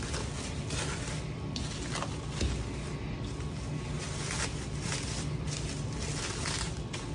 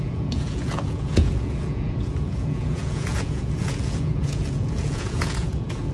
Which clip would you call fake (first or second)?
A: second